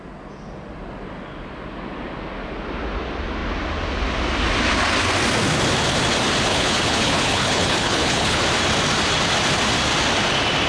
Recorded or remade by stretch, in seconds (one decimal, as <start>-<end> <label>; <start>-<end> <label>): 0.0-6.5 recorded; 6.5-8.4 remade; 8.4-10.7 recorded